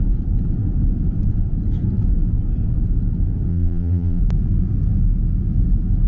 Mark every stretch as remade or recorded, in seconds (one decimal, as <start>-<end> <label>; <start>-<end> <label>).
0.0-3.5 recorded; 3.5-4.2 remade; 4.2-6.1 recorded